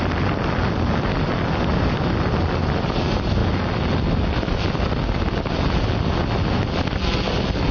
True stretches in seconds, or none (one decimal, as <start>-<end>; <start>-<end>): 0.0-7.7